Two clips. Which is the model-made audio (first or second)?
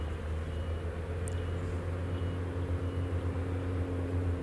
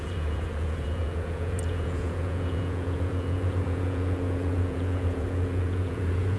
second